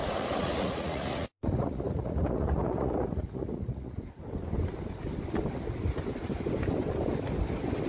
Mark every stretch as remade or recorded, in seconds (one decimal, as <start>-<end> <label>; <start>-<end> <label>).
0.0-4.0 remade; 4.0-7.9 recorded